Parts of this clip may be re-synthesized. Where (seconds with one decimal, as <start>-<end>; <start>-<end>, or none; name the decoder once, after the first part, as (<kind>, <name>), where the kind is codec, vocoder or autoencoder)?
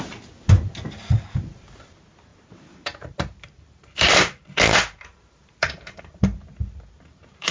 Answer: 2.3-6.0 (vocoder, BigVGAN v2)